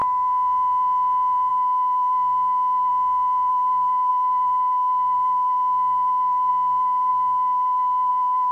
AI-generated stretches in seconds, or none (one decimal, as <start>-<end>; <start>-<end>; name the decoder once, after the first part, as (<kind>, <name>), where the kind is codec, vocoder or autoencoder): 1.5-2.9 (autoencoder, DAC-VAE); 3.5-8.5